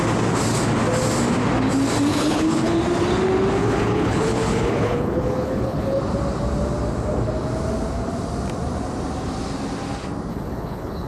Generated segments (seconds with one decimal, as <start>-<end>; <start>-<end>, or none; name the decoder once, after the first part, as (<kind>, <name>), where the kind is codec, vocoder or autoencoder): 2.1-2.8 (codec, HILCodec); 3.6-6.0; 10.3-11.1